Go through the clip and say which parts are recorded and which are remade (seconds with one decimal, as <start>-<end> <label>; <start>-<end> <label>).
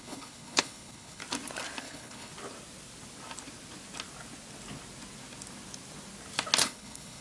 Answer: 0.0-1.2 remade; 1.2-1.8 recorded; 1.8-2.3 remade; 2.3-6.6 recorded; 6.6-7.2 remade